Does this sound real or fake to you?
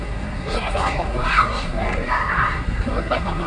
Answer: fake